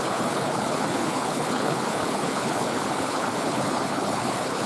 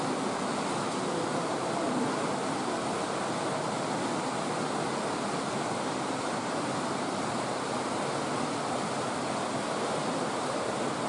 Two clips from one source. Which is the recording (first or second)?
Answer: second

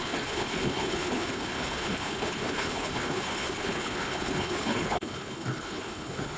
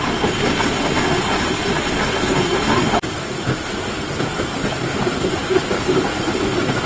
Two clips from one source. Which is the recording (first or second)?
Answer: second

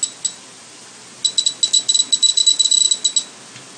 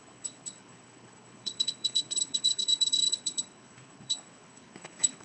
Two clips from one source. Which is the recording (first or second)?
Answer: first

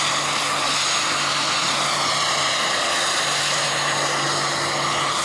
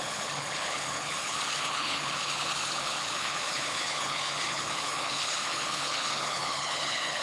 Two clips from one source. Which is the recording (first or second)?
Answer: first